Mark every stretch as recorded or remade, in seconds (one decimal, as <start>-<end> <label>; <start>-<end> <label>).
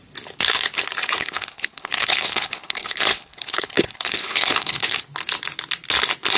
0.0-1.2 recorded; 1.2-5.0 remade; 5.0-6.4 recorded